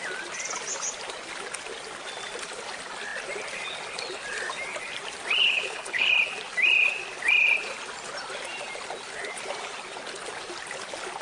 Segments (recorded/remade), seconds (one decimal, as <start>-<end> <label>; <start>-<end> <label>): 0.0-5.4 recorded; 5.4-6.1 remade; 6.1-11.2 recorded